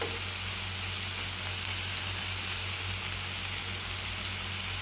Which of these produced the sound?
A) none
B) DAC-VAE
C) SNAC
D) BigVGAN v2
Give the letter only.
A